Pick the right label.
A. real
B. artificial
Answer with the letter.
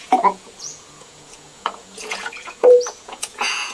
B